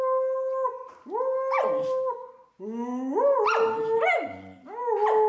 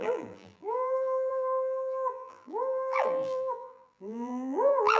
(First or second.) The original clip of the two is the first